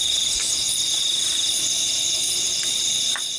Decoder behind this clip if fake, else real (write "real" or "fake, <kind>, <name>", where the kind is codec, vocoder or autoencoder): fake, vocoder, BigVGAN v2